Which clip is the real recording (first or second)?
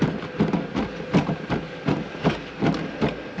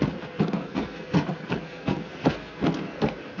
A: first